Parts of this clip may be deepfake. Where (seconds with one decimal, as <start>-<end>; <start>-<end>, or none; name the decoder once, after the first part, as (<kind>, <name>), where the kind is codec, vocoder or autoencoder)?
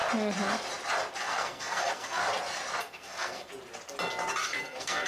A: 1.2-2.2 (codec, SNAC); 2.8-3.5; 4.4-5.1